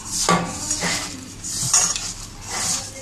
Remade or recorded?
recorded